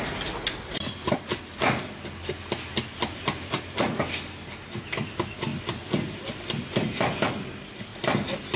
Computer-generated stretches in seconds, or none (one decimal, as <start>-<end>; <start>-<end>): 2.7-4.0; 5.5-7.1; 7.9-8.6